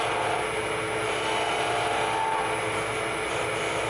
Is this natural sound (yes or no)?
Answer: yes